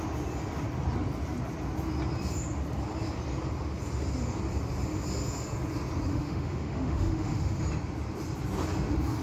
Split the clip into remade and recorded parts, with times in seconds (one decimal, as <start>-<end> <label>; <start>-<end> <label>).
0.0-6.1 recorded; 6.1-7.6 remade; 7.6-9.2 recorded